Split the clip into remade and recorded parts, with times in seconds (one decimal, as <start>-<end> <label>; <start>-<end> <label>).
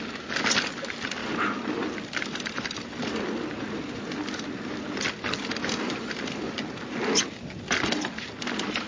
0.0-8.9 recorded